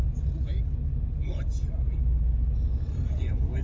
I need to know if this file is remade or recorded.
recorded